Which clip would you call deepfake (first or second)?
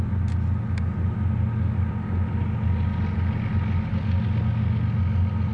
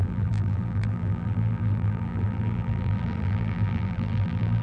second